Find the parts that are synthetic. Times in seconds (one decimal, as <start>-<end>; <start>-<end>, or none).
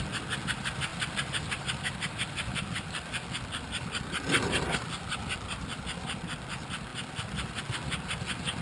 0.9-5.8; 6.9-7.6